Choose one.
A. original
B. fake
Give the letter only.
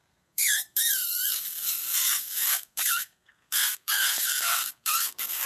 B